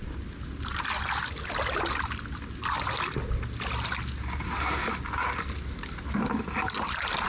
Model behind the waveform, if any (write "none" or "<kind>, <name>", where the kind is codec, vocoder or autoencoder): none